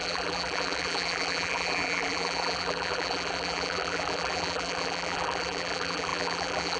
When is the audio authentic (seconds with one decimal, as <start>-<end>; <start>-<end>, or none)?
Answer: none